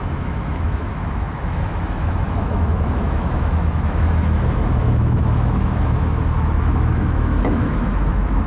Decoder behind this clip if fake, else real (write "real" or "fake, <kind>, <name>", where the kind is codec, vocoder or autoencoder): fake, autoencoder, DAC-VAE